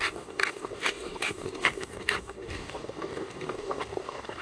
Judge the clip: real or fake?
fake